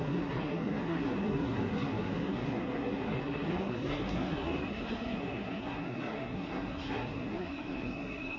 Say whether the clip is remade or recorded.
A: remade